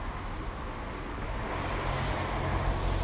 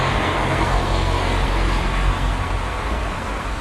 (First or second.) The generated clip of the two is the second